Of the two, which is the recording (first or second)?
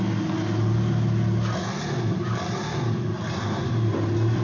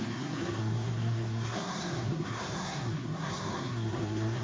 first